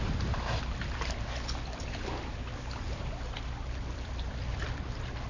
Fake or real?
real